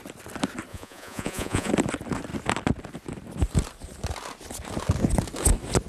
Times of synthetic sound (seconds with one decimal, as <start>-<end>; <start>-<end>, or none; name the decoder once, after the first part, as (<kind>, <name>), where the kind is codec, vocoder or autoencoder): 0.7-1.7 (vocoder, Vocos)